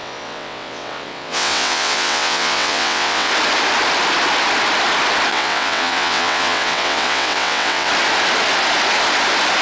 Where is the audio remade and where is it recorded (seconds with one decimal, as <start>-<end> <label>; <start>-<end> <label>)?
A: 0.0-3.3 remade; 3.3-5.3 recorded; 5.3-7.9 remade; 7.9-9.6 recorded